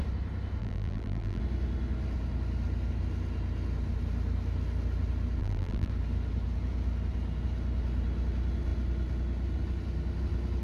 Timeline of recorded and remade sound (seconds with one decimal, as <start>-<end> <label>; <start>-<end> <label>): 0.0-0.6 recorded; 0.6-1.4 remade; 1.4-5.4 recorded; 5.4-5.9 remade; 5.9-10.6 recorded